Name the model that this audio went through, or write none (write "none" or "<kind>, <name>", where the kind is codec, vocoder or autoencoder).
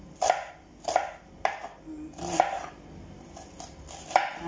none